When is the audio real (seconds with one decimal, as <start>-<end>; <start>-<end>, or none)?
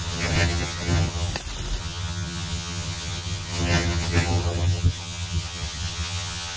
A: 1.3-1.8